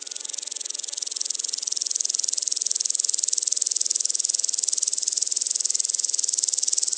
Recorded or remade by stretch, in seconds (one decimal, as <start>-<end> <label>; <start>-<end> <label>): 0.0-4.9 recorded; 4.9-5.5 remade; 5.5-7.0 recorded